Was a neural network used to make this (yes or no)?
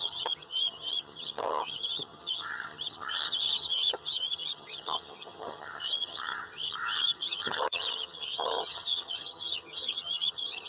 yes